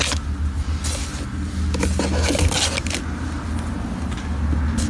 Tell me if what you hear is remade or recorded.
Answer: recorded